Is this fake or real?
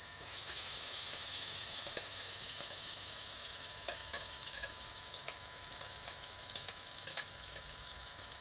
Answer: fake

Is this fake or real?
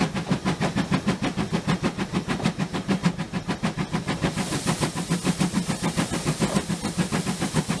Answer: real